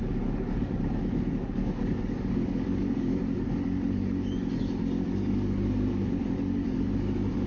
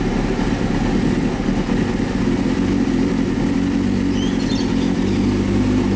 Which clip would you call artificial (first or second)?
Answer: first